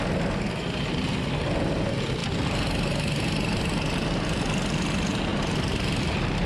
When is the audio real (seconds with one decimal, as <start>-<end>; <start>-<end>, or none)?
0.0-5.3; 6.0-6.5